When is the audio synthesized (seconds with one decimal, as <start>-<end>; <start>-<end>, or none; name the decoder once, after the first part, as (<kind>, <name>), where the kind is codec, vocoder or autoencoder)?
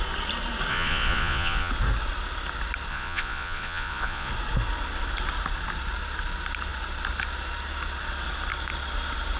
0.7-1.7 (vocoder, Vocos); 2.9-4.3